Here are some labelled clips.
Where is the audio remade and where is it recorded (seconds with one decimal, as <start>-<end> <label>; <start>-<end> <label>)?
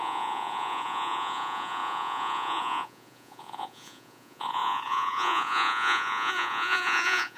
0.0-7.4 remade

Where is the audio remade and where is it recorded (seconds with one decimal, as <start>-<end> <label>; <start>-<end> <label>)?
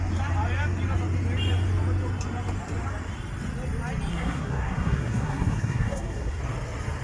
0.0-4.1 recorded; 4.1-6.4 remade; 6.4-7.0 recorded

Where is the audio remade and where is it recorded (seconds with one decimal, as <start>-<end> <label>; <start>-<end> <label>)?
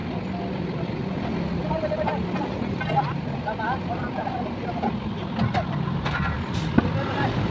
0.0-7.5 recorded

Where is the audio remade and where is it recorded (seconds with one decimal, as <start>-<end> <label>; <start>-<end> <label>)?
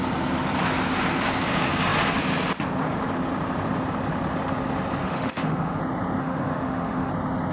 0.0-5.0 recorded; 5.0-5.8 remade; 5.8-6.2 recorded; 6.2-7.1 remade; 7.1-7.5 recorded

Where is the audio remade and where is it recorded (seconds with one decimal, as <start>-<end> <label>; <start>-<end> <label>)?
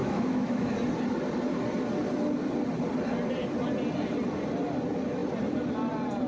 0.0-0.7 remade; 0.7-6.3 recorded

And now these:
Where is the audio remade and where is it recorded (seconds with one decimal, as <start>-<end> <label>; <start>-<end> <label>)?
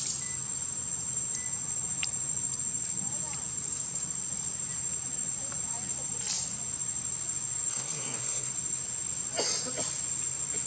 0.0-7.7 recorded; 7.7-8.5 remade; 8.5-10.7 recorded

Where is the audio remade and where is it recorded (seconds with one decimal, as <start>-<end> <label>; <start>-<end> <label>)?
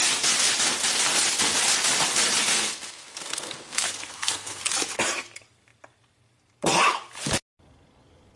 0.0-2.5 recorded; 2.5-4.6 remade; 4.6-8.4 recorded